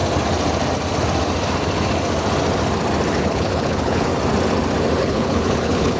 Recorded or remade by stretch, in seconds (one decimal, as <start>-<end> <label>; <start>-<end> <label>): 0.0-3.2 recorded; 3.2-4.1 remade; 4.1-5.0 recorded; 5.0-6.0 remade